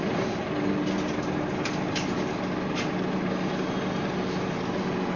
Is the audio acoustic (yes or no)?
yes